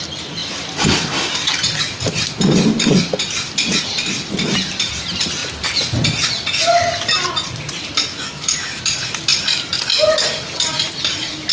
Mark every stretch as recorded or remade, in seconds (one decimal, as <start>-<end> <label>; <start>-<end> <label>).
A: 0.0-8.1 recorded; 8.1-8.8 remade; 8.8-11.5 recorded